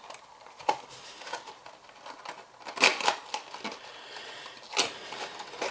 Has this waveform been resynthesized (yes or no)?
yes